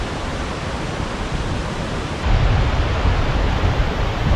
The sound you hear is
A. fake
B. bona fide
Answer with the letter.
B